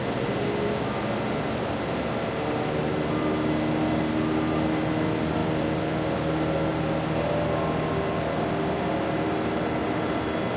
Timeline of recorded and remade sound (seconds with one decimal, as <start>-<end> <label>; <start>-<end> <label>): 0.0-10.6 recorded